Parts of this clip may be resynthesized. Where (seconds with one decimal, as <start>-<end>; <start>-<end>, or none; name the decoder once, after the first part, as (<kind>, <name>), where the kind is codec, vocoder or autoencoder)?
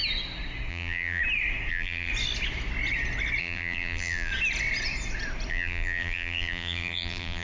0.7-1.2 (vocoder, BigVGAN v2); 1.7-2.1; 3.4-4.3; 5.5-7.4